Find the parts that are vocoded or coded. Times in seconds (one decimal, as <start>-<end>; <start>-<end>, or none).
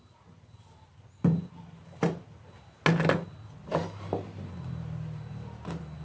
none